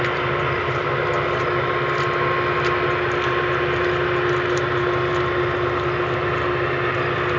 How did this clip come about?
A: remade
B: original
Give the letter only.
B